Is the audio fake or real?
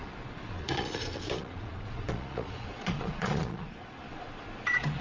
fake